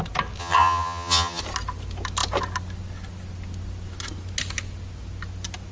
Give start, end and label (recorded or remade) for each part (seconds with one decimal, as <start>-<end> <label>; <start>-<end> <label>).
0.0-0.4 recorded; 0.4-1.4 remade; 1.4-5.7 recorded